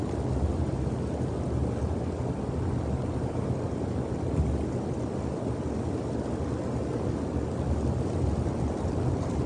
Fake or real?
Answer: real